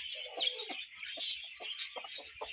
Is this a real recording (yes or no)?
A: yes